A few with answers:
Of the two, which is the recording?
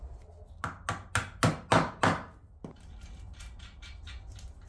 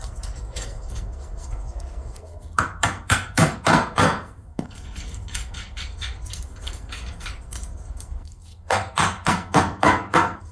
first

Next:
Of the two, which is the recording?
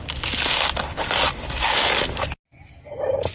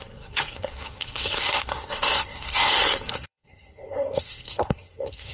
first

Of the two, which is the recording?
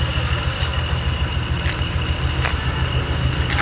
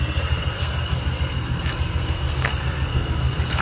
first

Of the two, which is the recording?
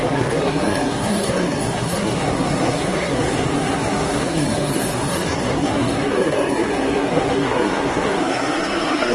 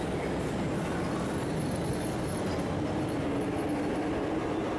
second